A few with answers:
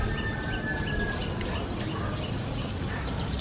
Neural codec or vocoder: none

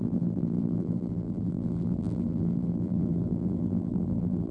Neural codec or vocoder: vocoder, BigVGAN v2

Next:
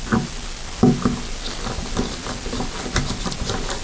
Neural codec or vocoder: none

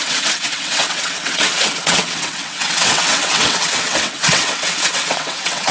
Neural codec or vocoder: vocoder, WaveNeXt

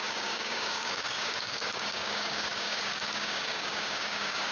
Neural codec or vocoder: codec, DAC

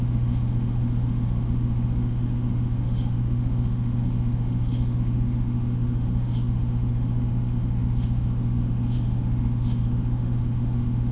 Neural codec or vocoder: autoencoder, DAC-VAE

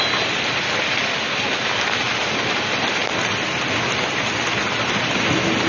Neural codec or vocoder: none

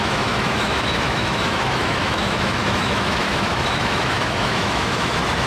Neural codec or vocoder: autoencoder, DAC-VAE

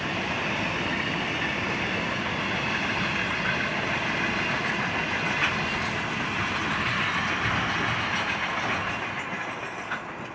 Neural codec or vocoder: none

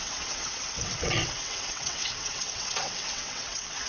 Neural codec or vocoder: vocoder, WaveNeXt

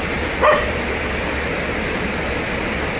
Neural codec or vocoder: none